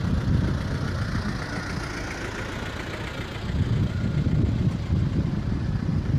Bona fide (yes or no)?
yes